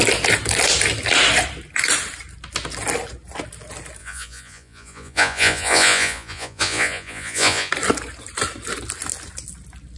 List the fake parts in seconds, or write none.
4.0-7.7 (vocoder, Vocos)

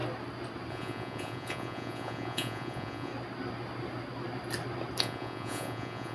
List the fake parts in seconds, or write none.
0.7-3.1 (vocoder, Vocos); 5.0-6.1

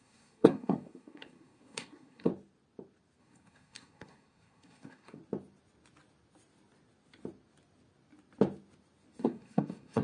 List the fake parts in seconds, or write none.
0.0-2.3 (codec, SNAC); 3.2-5.2; 9.2-10.0

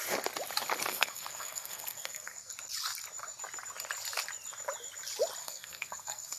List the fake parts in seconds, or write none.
0.9-2.5 (codec, SNAC); 5.4-6.4

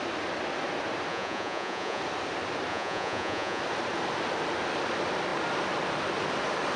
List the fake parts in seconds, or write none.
1.1-2.0 (vocoder, Vocos); 2.7-3.6

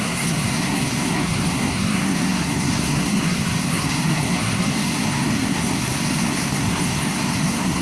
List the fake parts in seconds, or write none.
0.0-7.8 (codec, SNAC)

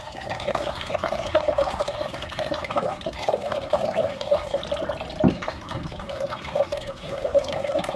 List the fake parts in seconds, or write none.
0.0-4.6 (codec, SNAC); 5.3-8.0

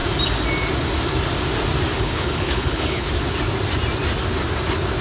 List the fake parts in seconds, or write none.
1.9-3.1 (codec, HILCodec)